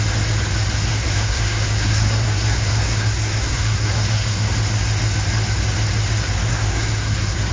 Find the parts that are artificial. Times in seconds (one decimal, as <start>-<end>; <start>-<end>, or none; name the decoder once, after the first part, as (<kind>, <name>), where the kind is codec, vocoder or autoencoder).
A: 0.9-4.5 (codec, SNAC); 6.5-7.5